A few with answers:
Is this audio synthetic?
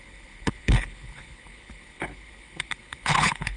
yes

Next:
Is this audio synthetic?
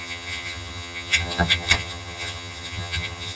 yes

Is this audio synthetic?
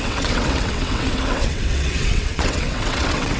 yes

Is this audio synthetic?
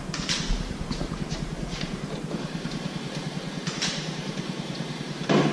yes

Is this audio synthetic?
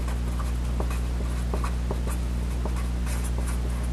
no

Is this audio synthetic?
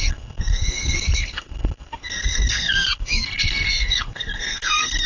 yes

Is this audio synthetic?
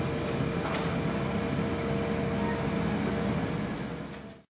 no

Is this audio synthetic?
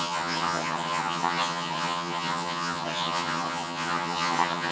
yes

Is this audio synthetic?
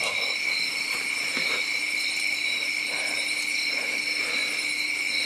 no